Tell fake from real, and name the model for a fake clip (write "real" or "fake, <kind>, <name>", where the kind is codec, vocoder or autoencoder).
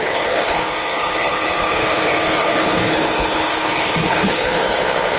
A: fake, codec, HILCodec